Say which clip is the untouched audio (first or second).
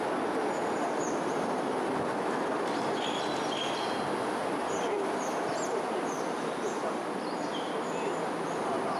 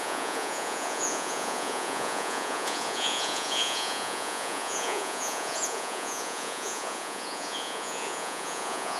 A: first